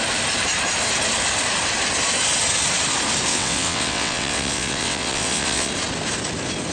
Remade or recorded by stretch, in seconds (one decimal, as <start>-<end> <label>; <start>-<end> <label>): 0.0-3.3 recorded; 3.3-5.7 remade; 5.7-6.7 recorded